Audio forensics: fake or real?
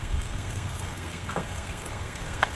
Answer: fake